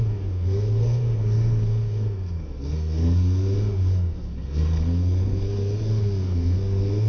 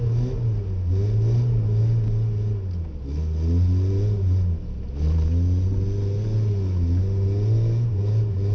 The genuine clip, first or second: second